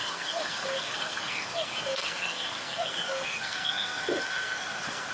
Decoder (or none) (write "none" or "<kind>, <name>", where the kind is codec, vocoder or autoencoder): codec, SNAC